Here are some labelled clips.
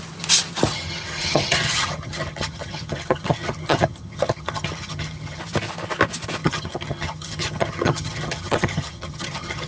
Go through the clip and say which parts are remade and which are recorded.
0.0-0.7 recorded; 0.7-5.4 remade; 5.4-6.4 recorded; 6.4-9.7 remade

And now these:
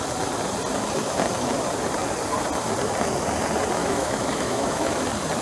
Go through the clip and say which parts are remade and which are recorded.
0.0-3.8 recorded; 3.8-5.0 remade; 5.0-5.4 recorded

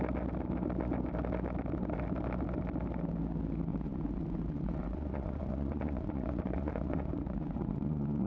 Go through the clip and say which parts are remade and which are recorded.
0.0-3.7 recorded; 3.7-8.3 remade